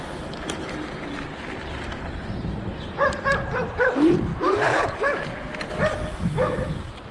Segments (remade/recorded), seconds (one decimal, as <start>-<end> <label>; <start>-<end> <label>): 0.0-7.1 recorded